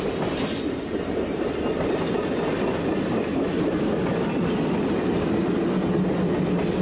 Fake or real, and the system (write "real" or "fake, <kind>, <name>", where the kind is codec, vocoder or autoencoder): real